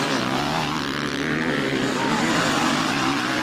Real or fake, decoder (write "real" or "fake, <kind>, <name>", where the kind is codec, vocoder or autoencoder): fake, vocoder, BigVGAN v2